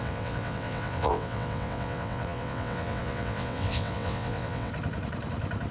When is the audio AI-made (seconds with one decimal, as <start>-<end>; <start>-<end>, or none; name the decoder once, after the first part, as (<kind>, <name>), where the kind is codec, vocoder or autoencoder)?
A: 0.0-4.7 (vocoder, WaveNeXt)